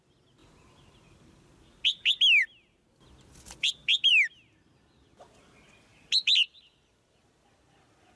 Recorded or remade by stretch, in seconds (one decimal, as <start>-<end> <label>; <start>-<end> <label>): 0.0-8.2 recorded